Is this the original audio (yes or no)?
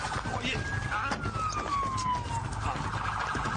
yes